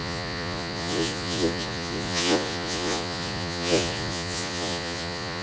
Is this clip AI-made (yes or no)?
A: yes